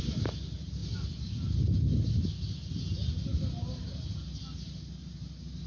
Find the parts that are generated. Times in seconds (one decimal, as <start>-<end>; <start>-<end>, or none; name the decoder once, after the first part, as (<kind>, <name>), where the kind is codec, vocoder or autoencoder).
none